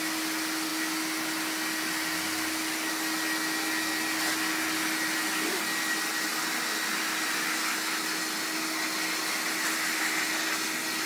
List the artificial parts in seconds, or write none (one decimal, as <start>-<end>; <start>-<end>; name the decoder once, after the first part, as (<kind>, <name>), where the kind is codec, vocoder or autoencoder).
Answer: none